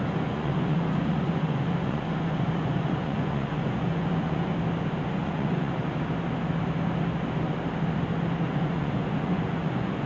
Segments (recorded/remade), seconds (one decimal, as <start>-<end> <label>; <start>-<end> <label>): 0.0-4.5 remade; 4.5-5.1 recorded; 5.1-5.7 remade; 5.7-8.5 recorded; 8.5-10.1 remade